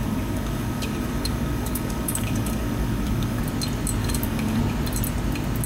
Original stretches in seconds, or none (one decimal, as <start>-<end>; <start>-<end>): 3.4-4.0; 4.6-5.7